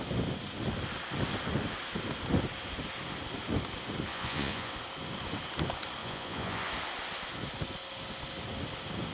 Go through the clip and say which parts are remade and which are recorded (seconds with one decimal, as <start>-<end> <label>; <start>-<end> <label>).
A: 0.0-4.1 recorded; 4.1-4.7 remade; 4.7-6.0 recorded; 6.0-6.7 remade; 6.7-9.1 recorded